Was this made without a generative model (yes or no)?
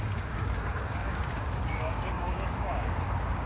no